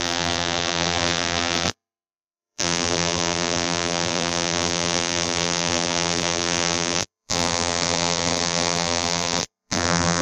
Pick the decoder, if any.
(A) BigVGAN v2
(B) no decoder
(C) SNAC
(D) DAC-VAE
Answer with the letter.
A